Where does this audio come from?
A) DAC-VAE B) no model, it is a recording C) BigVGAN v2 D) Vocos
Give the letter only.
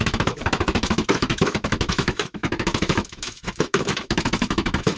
A